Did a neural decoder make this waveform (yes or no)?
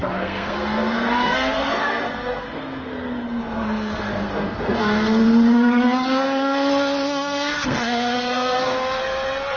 yes